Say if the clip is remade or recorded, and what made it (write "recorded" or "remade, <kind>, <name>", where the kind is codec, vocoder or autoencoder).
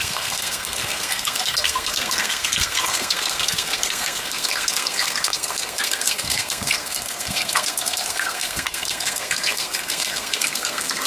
remade, codec, SNAC